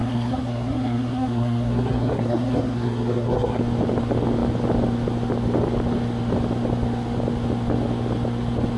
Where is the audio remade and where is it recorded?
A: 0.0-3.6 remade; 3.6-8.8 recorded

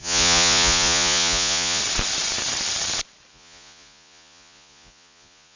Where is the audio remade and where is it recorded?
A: 0.0-1.8 remade; 1.8-3.3 recorded; 3.3-5.6 remade

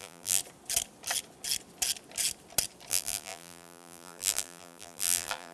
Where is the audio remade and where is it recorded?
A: 0.0-0.4 remade; 0.4-2.9 recorded; 2.9-5.5 remade